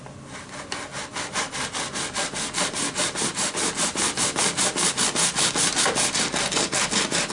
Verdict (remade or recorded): recorded